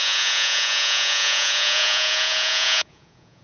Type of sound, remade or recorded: remade